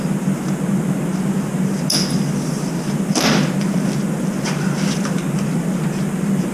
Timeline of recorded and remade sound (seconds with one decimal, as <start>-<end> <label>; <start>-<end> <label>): 0.0-6.5 recorded